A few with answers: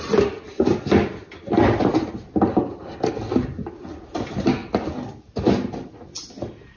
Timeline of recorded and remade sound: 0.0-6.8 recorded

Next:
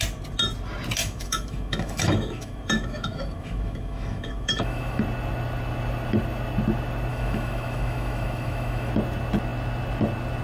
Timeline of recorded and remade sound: 0.0-1.0 recorded; 1.0-5.0 remade; 5.0-7.1 recorded; 7.1-8.9 remade; 8.9-10.4 recorded

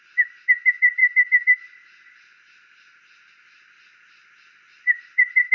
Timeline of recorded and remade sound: 0.0-5.5 recorded

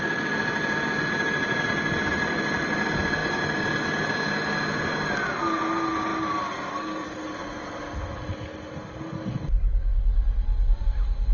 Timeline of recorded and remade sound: 0.0-11.3 recorded

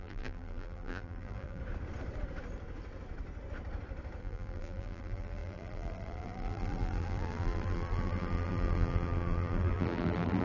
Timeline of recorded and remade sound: 0.0-1.6 remade; 1.6-4.2 recorded; 4.2-10.4 remade